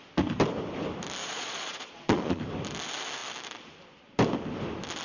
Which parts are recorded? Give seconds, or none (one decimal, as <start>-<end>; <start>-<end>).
0.0-1.2; 2.4-5.0